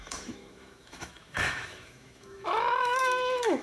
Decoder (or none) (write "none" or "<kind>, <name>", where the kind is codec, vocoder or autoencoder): autoencoder, DAC-VAE